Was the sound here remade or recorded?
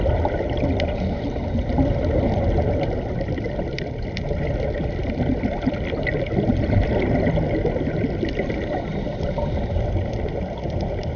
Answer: remade